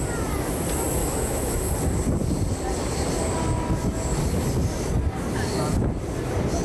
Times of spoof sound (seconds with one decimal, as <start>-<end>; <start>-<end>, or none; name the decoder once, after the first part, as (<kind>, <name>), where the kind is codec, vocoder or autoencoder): 1.0-1.7 (autoencoder, DAC-VAE)